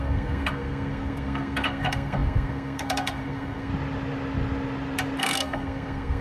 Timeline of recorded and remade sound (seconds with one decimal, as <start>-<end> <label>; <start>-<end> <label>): 0.0-3.7 remade; 3.7-5.2 recorded; 5.2-6.2 remade